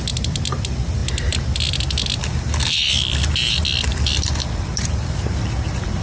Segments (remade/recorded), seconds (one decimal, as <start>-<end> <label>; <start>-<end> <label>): 0.0-6.0 recorded